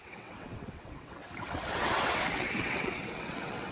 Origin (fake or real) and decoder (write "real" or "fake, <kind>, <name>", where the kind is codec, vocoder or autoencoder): fake, vocoder, WaveNeXt